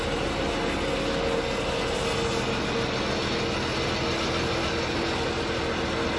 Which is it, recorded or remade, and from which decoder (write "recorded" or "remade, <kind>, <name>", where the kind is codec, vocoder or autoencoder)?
recorded